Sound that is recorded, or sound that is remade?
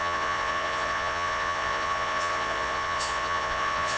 remade